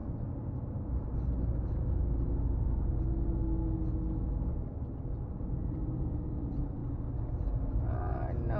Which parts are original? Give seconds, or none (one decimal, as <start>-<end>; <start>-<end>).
0.0-8.6

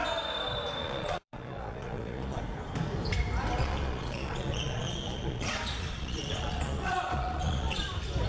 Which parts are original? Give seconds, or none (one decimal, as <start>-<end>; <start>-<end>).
0.0-0.8; 2.4-3.6; 7.9-8.3

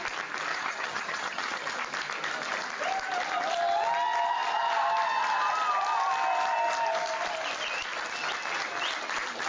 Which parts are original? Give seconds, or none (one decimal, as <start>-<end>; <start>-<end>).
0.0-0.5; 1.7-9.5

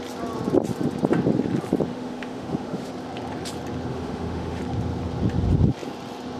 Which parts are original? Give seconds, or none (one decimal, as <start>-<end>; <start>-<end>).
0.0-1.9; 2.9-3.9; 4.6-6.4

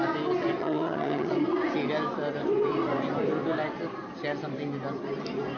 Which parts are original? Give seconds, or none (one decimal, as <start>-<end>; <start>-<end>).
0.0-0.6; 1.3-5.6

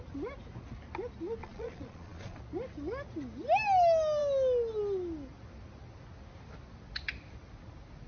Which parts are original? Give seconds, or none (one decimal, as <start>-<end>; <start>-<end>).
0.0-1.4; 2.4-8.1

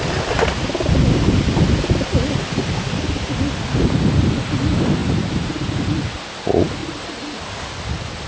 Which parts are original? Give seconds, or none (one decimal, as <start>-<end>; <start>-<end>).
0.0-5.0; 6.1-8.3